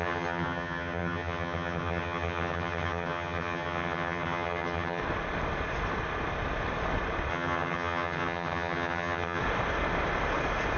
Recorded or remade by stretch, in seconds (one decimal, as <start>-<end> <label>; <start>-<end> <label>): 0.0-5.0 remade; 5.0-7.3 recorded; 7.3-9.4 remade; 9.4-10.8 recorded